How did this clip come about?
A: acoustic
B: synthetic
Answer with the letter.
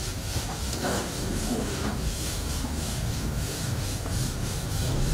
B